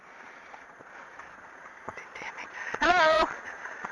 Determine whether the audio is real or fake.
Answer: fake